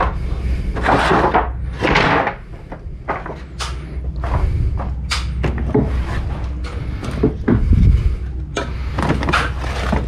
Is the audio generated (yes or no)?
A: no